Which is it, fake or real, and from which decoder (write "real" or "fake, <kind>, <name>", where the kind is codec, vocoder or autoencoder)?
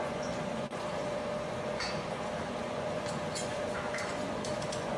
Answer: fake, vocoder, Vocos